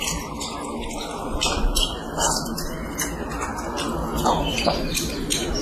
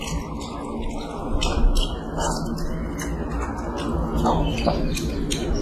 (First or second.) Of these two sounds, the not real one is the first